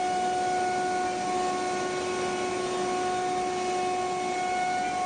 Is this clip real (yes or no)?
yes